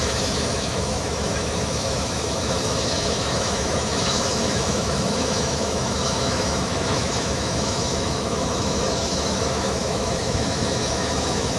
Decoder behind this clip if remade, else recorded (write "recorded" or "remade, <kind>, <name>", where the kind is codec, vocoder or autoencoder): remade, autoencoder, DAC-VAE